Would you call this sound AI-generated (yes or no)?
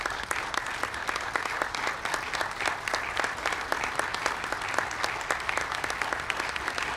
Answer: no